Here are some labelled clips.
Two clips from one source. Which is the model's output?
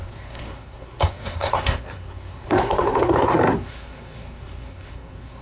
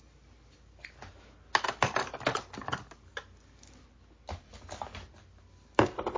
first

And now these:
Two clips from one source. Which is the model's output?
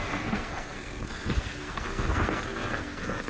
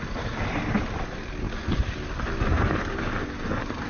first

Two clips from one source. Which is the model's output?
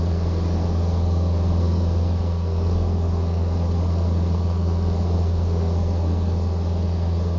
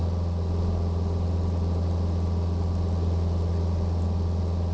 first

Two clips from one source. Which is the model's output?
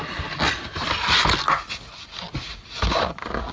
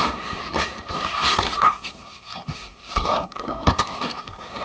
second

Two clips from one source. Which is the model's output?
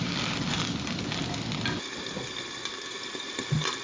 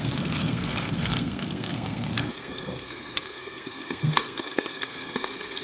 second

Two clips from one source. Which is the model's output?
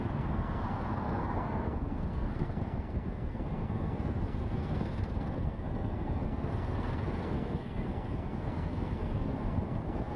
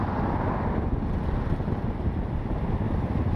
first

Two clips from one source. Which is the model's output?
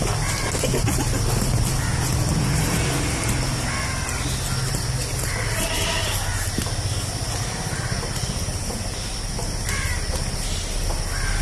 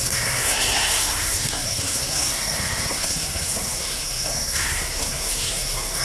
second